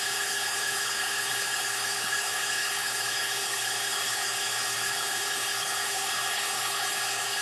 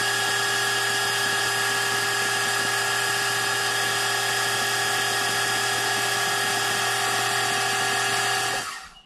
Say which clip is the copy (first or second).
first